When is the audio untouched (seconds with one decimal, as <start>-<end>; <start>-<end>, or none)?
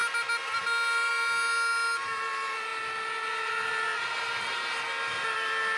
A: 0.0-5.8